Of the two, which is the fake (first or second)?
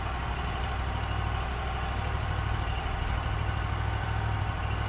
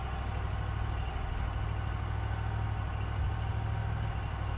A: first